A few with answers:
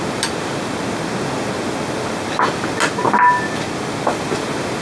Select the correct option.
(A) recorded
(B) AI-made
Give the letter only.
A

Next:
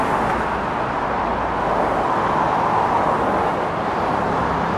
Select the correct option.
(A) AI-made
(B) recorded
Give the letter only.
B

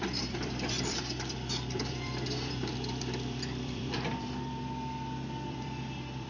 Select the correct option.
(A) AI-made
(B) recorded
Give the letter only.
A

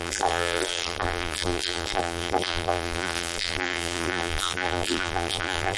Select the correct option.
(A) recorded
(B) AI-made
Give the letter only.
B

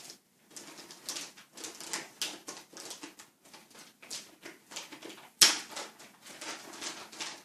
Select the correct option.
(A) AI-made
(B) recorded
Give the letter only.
B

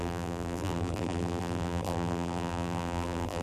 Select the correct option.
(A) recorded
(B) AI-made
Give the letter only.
B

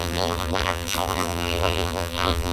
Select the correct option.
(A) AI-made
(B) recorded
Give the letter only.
A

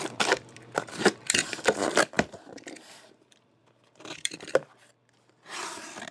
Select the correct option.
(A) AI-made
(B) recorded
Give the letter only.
A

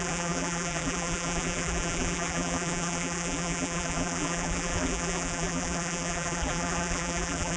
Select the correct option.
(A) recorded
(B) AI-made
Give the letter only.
B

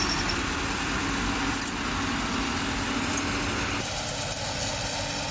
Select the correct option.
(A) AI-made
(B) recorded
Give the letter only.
B